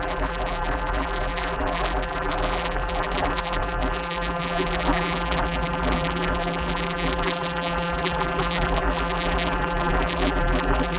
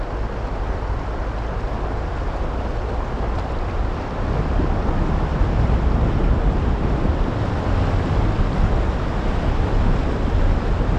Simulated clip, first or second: first